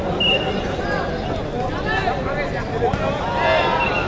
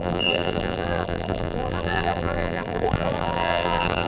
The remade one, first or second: second